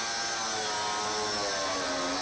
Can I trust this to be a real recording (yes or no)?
yes